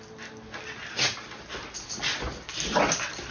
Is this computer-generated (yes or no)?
no